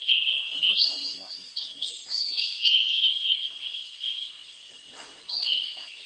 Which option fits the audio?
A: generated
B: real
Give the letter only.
A